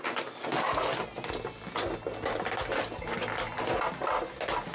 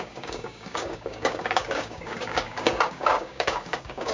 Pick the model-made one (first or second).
second